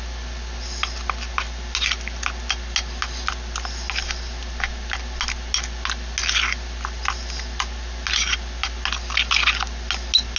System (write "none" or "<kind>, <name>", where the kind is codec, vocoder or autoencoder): none